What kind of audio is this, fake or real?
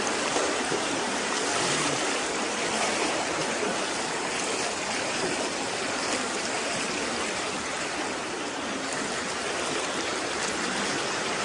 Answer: fake